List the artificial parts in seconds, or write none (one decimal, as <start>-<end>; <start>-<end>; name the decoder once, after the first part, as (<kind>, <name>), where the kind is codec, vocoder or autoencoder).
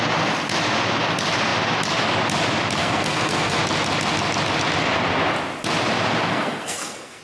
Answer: 2.8-3.6 (codec, SNAC); 6.3-7.2